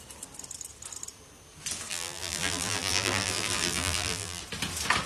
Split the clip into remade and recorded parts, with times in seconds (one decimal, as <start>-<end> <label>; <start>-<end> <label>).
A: 0.0-1.9 recorded; 1.9-4.4 remade; 4.4-5.1 recorded